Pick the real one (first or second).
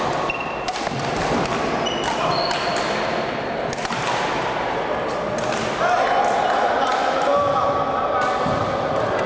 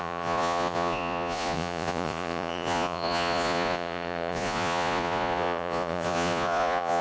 first